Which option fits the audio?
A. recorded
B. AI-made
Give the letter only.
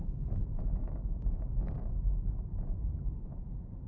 B